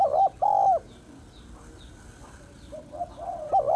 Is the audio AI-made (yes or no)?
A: no